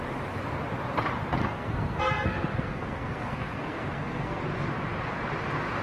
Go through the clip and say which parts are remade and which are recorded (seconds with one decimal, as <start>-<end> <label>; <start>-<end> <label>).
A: 0.0-1.4 recorded; 1.4-4.4 remade; 4.4-5.8 recorded